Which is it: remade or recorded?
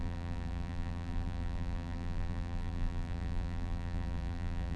remade